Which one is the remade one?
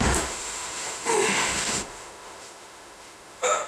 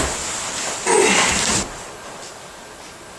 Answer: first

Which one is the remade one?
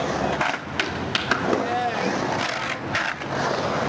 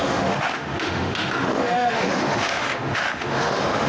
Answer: second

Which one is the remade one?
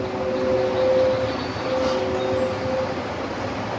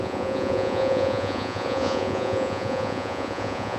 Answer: second